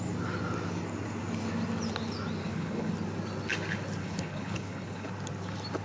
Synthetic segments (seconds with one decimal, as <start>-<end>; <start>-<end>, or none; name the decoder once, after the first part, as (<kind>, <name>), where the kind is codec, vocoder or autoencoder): 2.4-2.9 (codec, HILCodec); 4.0-5.1

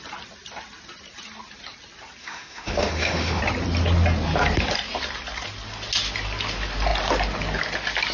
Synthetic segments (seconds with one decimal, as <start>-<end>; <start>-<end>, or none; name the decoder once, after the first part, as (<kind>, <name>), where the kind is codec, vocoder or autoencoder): 2.2-3.4 (autoencoder, DAC-VAE)

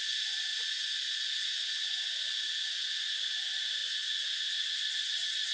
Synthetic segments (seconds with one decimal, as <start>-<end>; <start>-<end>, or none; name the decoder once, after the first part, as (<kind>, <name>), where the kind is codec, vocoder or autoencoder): none

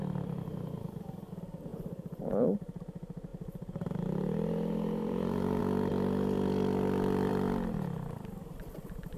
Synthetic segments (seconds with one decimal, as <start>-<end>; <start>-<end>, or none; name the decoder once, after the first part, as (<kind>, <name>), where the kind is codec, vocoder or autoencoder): 1.7-2.8 (vocoder, BigVGAN v2); 3.3-5.6

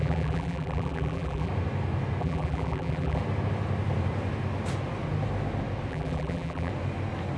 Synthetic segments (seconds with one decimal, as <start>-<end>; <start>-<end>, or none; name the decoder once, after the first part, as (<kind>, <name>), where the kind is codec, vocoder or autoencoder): 0.0-1.5 (vocoder, BigVGAN v2); 2.2-3.2; 5.9-6.7